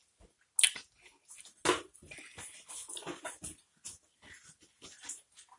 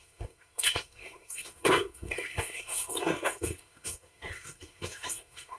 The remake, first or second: second